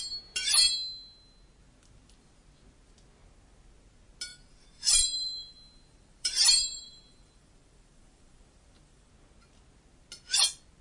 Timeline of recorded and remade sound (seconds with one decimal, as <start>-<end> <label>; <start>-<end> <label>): 0.0-4.3 recorded; 4.3-9.1 remade; 9.1-10.8 recorded